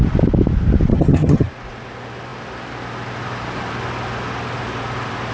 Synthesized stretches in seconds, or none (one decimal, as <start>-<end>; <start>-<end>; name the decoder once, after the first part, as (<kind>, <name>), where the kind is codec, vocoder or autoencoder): 0.9-1.5 (vocoder, HiFi-GAN)